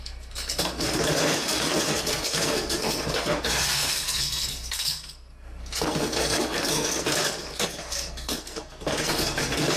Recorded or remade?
remade